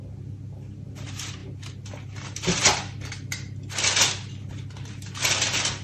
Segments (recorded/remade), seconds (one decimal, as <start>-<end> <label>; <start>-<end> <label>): 0.0-5.8 recorded